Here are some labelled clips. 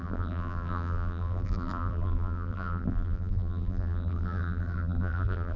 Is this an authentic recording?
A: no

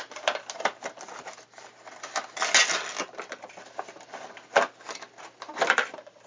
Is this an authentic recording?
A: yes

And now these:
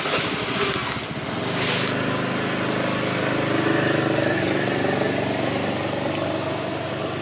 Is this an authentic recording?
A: yes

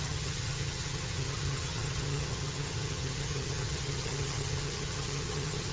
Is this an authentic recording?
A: no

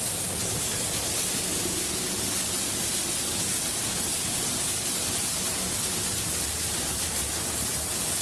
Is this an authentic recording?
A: yes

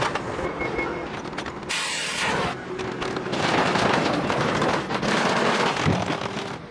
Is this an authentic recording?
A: yes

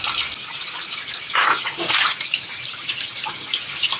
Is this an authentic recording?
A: yes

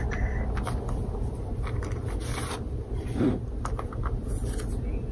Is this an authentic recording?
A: yes